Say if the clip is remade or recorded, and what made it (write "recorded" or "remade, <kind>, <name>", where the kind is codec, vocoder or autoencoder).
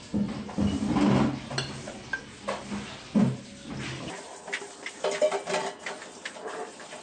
recorded